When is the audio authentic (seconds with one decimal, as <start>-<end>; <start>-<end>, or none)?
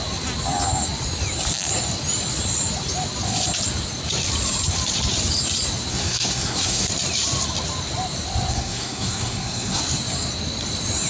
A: 0.0-5.9; 6.9-8.5; 9.8-11.1